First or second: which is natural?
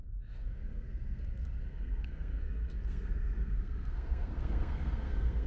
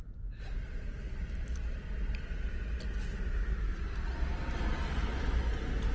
second